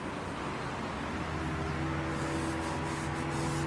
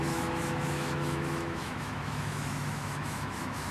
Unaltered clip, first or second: first